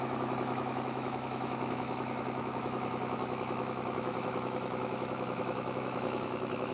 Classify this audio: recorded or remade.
remade